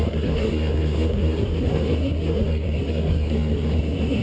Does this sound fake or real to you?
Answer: fake